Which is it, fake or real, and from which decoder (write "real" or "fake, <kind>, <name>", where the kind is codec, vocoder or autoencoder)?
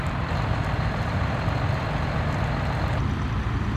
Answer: real